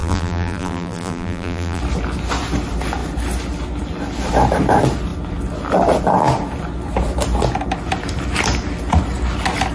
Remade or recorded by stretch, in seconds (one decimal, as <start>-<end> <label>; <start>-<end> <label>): 0.0-1.8 remade; 1.8-9.7 recorded